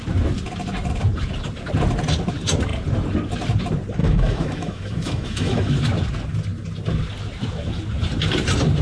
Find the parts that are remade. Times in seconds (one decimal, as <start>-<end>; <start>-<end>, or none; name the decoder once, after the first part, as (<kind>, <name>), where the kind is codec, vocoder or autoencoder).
4.0-5.7 (autoencoder, DAC-VAE)